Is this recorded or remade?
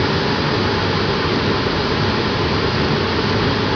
recorded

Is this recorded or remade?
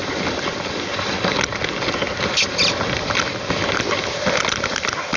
recorded